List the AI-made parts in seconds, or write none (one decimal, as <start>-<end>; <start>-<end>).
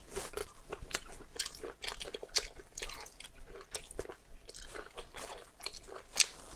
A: 0.4-0.9